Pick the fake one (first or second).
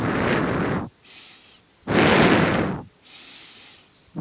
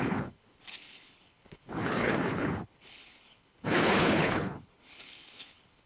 second